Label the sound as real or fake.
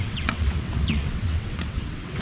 fake